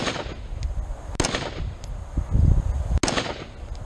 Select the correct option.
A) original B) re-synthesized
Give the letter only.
A